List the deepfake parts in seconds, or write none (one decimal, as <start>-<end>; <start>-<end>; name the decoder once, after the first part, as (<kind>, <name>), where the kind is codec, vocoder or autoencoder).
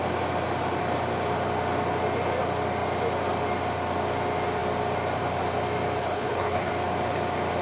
6.0-6.7 (codec, HILCodec)